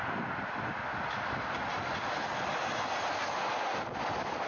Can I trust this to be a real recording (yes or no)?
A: yes